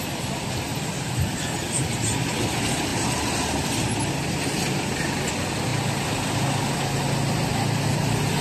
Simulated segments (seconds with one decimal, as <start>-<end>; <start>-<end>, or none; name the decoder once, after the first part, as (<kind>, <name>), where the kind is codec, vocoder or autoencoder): none